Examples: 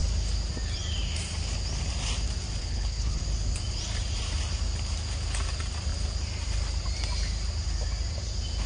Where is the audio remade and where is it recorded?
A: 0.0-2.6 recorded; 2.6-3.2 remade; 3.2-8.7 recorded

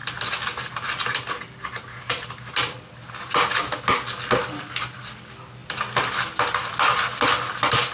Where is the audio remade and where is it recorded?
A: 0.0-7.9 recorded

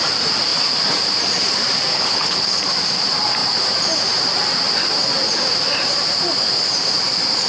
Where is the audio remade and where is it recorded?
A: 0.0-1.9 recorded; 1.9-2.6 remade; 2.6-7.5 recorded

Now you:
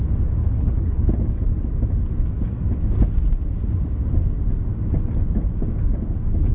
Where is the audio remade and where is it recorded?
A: 0.0-0.4 recorded; 0.4-1.1 remade; 1.1-6.5 recorded

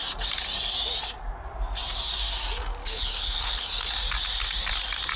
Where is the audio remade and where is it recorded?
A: 0.0-2.8 recorded; 2.8-3.7 remade; 3.7-5.2 recorded